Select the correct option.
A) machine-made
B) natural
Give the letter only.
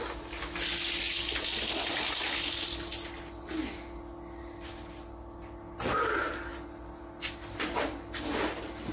B